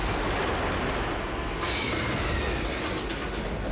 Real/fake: real